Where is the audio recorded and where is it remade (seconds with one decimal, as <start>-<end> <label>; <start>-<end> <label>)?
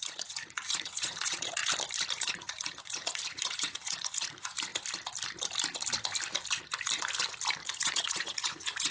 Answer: 0.0-1.6 remade; 1.6-2.1 recorded; 2.1-4.7 remade; 4.7-7.6 recorded; 7.6-8.9 remade